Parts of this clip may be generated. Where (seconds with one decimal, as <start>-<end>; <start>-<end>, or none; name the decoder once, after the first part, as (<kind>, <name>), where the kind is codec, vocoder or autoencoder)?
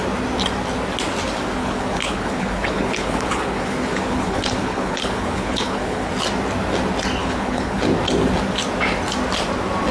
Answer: 1.6-6.1 (codec, HILCodec); 7.2-7.8